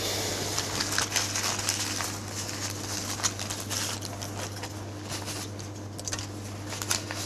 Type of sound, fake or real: real